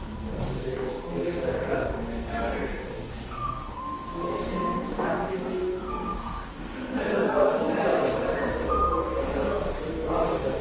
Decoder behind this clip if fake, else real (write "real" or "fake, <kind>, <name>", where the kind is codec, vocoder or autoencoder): fake, codec, SNAC